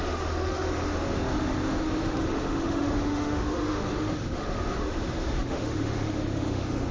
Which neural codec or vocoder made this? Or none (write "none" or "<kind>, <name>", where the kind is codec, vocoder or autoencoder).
autoencoder, DAC-VAE